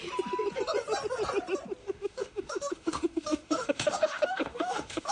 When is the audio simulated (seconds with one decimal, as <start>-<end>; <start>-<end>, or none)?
1.8-5.1